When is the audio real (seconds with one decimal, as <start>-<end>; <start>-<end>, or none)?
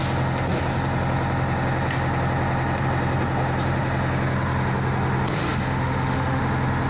0.0-5.4; 6.4-6.9